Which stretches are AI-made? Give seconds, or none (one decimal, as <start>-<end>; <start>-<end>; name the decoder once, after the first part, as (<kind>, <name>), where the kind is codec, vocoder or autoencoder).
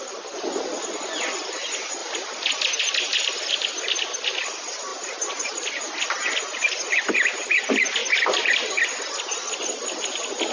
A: none